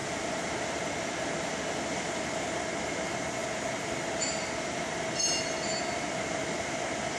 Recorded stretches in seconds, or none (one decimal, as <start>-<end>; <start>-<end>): 0.0-7.2